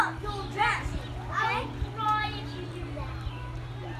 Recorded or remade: recorded